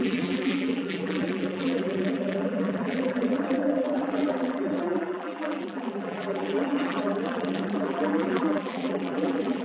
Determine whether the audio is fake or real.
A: fake